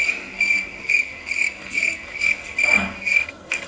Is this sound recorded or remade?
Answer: remade